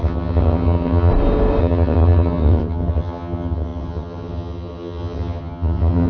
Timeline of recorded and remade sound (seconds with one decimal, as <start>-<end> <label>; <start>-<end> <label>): 0.0-1.1 remade; 1.1-1.6 recorded; 1.6-6.1 remade